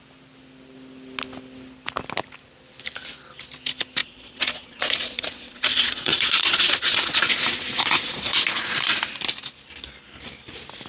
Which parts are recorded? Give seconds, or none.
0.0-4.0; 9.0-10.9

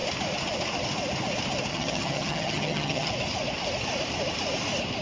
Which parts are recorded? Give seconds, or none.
0.0-1.7; 3.1-5.0

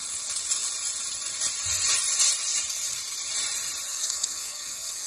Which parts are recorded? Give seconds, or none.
0.0-3.9

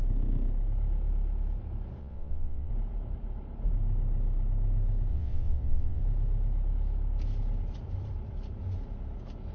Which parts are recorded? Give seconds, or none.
0.0-2.0; 2.7-5.1; 6.0-9.5

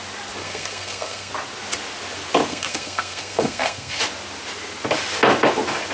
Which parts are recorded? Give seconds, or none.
0.0-0.4; 1.3-2.5; 4.0-5.9